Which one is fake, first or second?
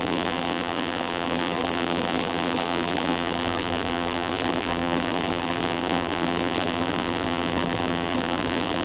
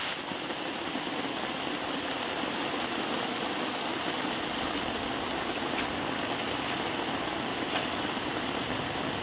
first